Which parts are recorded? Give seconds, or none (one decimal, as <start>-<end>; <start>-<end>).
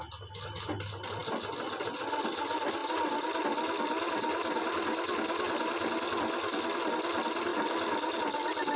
0.0-7.5; 8.2-8.8